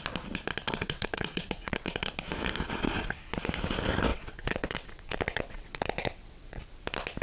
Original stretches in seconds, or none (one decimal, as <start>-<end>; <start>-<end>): 0.0-0.6; 2.1-4.1; 6.6-7.2